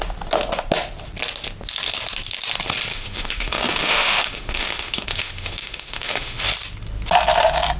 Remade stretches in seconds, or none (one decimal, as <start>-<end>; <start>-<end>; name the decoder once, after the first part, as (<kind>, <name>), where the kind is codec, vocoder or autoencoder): 2.9-6.4 (autoencoder, DAC-VAE)